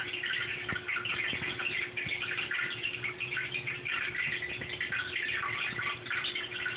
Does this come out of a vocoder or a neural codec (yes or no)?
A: no